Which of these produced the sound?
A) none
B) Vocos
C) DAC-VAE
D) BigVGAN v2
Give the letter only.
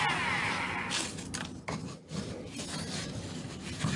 A